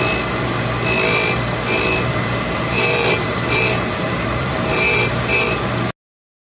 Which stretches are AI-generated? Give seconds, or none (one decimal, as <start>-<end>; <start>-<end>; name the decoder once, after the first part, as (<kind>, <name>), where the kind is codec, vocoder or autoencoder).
2.1-5.4 (vocoder, BigVGAN v2)

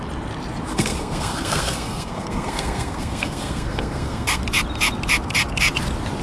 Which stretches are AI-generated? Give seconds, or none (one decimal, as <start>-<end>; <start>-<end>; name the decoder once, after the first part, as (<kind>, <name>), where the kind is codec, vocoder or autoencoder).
0.7-4.4 (codec, SNAC)

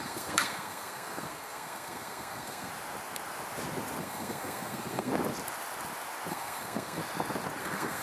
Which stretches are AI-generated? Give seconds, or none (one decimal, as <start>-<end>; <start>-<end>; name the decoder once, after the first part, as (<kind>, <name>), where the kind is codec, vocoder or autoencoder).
0.0-2.7 (codec, SNAC); 4.0-5.1; 6.3-7.0; 7.6-8.0

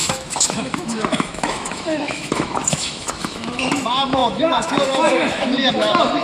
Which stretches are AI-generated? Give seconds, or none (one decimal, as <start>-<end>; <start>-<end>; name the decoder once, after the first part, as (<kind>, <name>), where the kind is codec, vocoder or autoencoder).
0.0-6.2 (autoencoder, DAC-VAE)

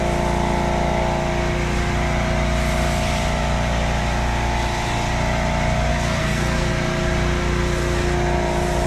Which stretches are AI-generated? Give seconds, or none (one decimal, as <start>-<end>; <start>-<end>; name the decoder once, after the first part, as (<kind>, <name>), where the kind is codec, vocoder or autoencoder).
5.9-6.7 (codec, SNAC)

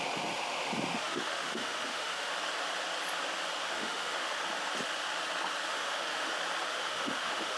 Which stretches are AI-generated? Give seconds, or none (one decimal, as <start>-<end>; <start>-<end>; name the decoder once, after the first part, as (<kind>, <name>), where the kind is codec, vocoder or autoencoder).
0.9-2.3 (autoencoder, DAC-VAE); 3.6-4.4; 5.7-6.3; 6.7-7.6